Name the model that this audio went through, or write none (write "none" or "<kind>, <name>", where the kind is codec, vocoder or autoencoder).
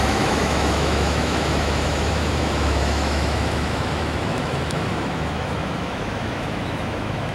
autoencoder, DAC-VAE